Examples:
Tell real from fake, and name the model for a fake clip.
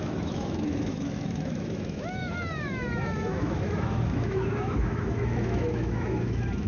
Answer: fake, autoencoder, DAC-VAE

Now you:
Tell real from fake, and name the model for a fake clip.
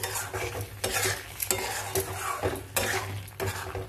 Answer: real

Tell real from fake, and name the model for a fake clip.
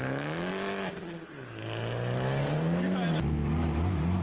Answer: real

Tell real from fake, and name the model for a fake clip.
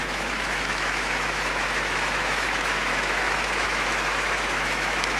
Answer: fake, autoencoder, DAC-VAE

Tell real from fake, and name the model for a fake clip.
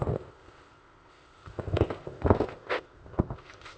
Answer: fake, codec, ZipCodec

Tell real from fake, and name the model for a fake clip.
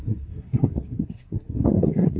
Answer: fake, codec, SNAC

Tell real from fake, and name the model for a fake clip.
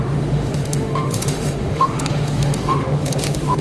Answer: fake, autoencoder, DAC-VAE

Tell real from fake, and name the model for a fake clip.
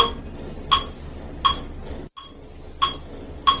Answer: real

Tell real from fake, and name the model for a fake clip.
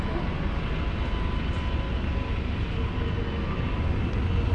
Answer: real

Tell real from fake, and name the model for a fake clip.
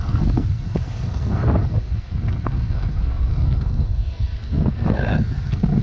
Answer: fake, codec, SNAC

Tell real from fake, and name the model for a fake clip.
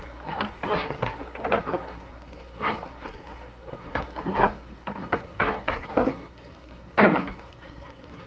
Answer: fake, codec, SNAC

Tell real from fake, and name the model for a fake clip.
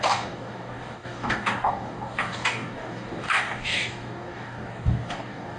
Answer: fake, codec, DAC